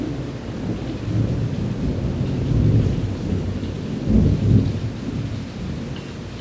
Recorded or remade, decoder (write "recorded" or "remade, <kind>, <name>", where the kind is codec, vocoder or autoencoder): recorded